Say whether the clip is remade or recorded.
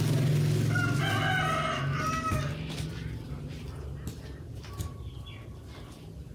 recorded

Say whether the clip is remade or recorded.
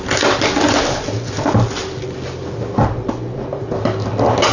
recorded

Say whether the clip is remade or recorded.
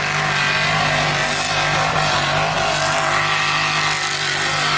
recorded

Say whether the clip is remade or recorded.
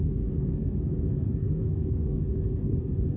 remade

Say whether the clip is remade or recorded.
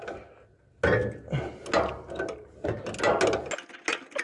recorded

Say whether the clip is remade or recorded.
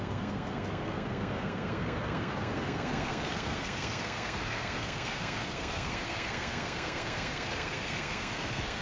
remade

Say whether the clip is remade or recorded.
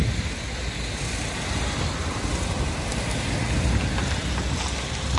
recorded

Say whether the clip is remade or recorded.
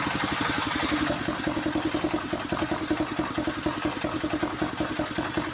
recorded